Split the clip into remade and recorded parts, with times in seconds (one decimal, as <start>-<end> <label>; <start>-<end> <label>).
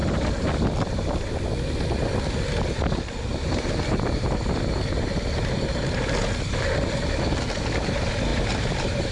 0.0-8.3 recorded; 8.3-9.1 remade